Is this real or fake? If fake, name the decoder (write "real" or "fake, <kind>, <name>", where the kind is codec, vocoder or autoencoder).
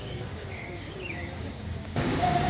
fake, codec, DAC